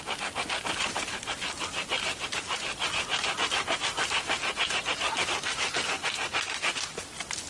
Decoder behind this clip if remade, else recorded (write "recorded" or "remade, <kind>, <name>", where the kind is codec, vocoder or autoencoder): recorded